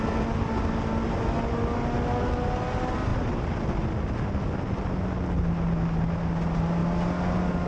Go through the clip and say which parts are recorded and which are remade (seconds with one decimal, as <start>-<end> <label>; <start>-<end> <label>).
0.0-7.7 recorded